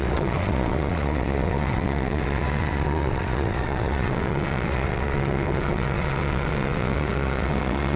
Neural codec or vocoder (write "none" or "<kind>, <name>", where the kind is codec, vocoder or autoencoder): vocoder, WaveNeXt